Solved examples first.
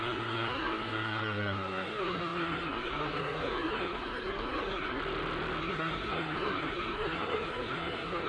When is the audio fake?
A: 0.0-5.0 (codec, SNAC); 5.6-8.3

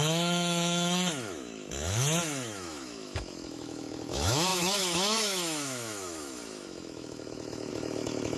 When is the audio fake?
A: 0.0-8.4 (autoencoder, DAC-VAE)

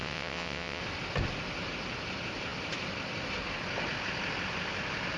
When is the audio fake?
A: 0.0-0.8 (vocoder, WaveNeXt)

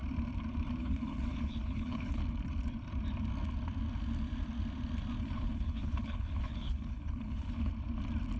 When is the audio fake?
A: 0.8-2.2 (codec, HILCodec); 5.2-7.7